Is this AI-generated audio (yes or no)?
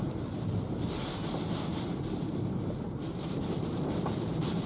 yes